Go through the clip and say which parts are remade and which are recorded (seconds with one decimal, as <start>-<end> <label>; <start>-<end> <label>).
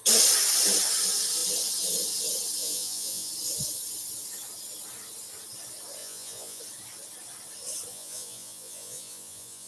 0.0-2.6 recorded; 2.6-3.3 remade; 3.3-6.0 recorded; 6.0-6.6 remade; 6.6-7.9 recorded; 7.9-9.7 remade